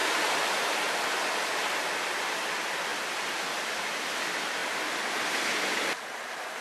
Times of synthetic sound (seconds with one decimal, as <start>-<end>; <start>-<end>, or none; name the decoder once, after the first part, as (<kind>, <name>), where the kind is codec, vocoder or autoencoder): 0.0-1.0 (vocoder, BigVGAN v2)